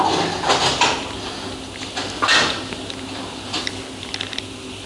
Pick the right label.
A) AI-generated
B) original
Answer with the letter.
B